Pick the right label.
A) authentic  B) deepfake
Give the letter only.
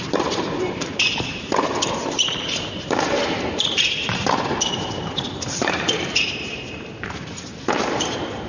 B